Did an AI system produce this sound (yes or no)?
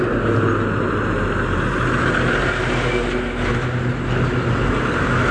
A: no